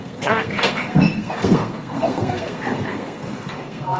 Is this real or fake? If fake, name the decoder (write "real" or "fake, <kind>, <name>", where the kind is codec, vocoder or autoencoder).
fake, codec, SNAC